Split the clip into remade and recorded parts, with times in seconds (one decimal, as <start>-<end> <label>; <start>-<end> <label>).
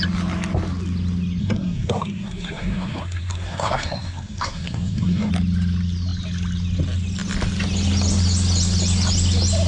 0.0-1.4 recorded; 1.4-5.3 remade; 5.3-9.7 recorded